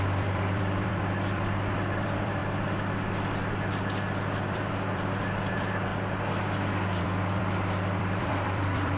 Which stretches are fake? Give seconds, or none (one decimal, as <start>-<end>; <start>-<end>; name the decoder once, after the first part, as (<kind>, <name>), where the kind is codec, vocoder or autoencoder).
0.0-2.4 (vocoder, BigVGAN v2); 3.7-5.9; 7.0-9.0